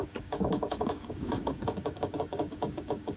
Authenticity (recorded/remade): remade